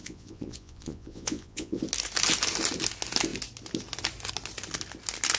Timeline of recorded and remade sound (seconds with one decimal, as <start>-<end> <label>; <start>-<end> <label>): 0.0-1.8 remade; 1.8-5.4 recorded